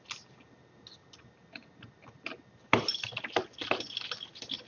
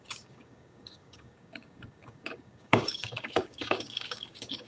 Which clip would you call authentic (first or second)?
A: first